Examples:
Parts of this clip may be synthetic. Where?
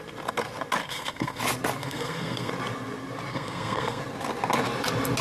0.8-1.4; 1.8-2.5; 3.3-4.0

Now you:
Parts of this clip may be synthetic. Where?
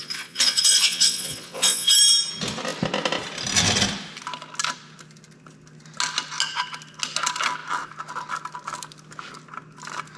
0.0-1.9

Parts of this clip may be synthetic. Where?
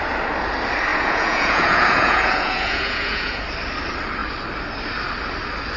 0.9-3.4